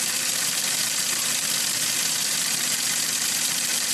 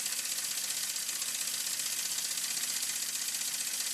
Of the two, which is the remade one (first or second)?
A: first